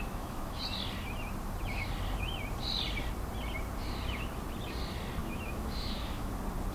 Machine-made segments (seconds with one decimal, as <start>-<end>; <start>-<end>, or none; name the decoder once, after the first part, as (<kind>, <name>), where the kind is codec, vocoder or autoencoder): 0.0-0.6 (autoencoder, DAC-VAE); 5.2-6.3